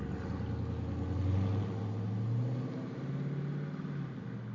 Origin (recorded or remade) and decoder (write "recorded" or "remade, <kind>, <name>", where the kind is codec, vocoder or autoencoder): recorded